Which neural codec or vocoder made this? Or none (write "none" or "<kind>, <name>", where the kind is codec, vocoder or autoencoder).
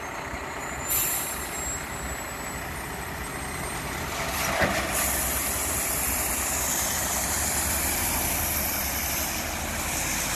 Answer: none